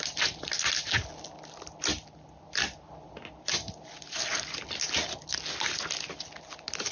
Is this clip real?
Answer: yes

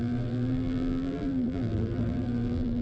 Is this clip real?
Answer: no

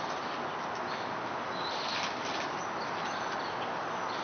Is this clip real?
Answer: yes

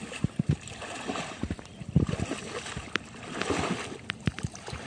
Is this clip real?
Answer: yes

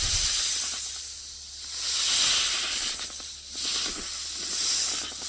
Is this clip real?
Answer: yes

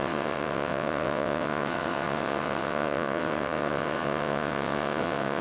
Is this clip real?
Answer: no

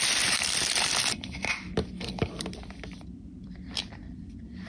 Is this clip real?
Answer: no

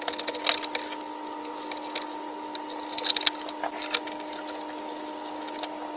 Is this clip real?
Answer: yes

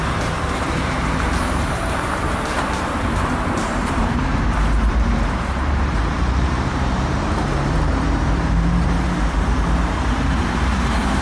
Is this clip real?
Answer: no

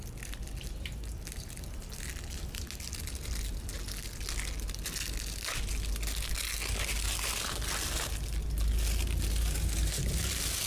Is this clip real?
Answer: yes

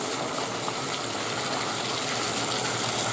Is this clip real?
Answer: yes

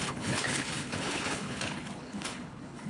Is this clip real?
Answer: no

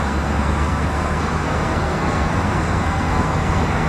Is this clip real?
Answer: no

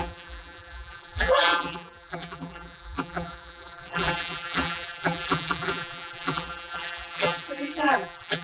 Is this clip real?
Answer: no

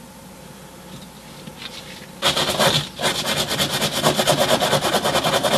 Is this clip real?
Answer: yes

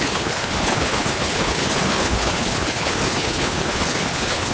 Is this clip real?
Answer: no